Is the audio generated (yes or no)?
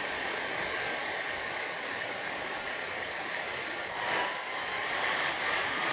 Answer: yes